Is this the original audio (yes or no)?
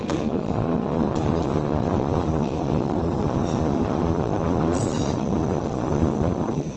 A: no